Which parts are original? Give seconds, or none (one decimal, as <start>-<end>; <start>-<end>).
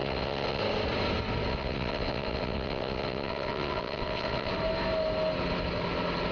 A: 0.6-1.5; 4.5-6.3